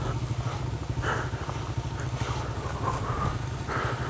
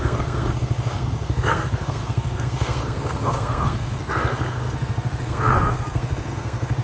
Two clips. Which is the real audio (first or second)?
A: first